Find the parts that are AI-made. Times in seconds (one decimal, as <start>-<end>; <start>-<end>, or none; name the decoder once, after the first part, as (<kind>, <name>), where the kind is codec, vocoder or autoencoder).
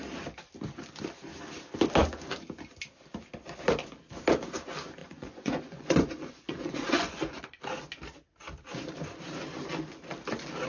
5.0-7.4 (vocoder, Vocos)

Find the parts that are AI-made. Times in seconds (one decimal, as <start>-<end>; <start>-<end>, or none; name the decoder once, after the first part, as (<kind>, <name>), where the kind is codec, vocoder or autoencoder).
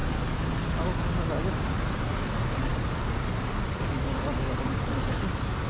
none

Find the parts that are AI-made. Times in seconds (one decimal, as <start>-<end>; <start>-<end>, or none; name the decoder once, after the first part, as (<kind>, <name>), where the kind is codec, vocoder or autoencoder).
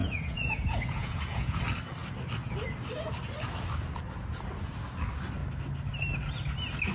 0.0-1.6 (vocoder, Vocos)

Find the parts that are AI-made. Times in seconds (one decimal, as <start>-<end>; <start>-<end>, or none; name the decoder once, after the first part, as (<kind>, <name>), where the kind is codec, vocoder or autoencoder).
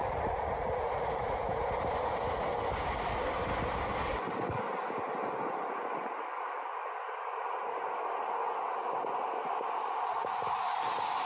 0.0-1.7 (vocoder, Vocos)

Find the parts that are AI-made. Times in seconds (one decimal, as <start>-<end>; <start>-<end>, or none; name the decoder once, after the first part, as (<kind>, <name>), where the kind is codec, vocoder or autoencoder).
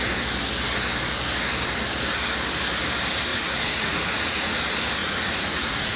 3.3-4.6 (vocoder, Vocos); 5.0-6.0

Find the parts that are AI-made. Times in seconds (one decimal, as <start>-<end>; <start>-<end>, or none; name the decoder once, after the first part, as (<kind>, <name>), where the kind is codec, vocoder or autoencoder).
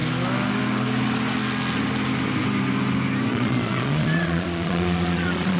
3.3-5.6 (vocoder, Vocos)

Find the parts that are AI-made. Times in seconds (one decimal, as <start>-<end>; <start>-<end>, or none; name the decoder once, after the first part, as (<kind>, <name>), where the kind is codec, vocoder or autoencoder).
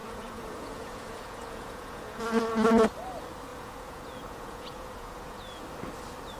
0.0-2.2 (vocoder, Vocos); 3.5-5.6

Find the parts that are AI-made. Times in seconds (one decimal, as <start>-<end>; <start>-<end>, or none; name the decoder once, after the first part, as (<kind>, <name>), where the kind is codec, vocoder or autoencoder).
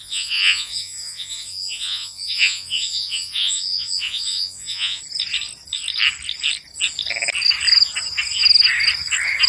0.0-5.0 (vocoder, Vocos)